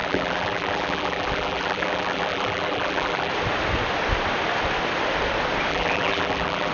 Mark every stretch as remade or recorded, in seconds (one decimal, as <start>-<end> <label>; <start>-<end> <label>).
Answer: 0.0-3.3 remade; 3.3-5.7 recorded; 5.7-6.7 remade